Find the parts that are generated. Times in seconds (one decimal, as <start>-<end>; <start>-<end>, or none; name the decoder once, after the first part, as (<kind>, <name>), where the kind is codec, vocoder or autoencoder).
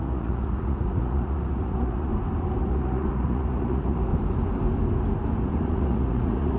0.0-2.1 (vocoder, Vocos); 2.6-4.1; 5.4-6.6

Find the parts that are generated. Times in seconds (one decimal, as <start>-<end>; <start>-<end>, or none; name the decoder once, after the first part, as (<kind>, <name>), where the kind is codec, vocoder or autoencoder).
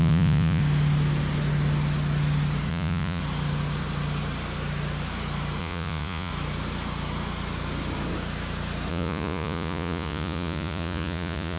0.0-0.6 (vocoder, Vocos); 2.7-3.2; 5.6-6.3; 8.9-11.6